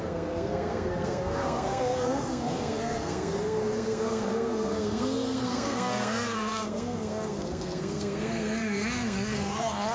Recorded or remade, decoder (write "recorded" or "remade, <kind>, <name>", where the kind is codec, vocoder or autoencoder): remade, codec, SNAC